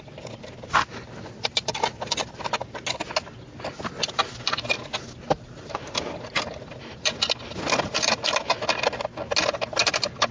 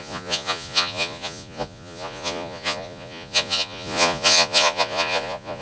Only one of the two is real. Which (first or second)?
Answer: first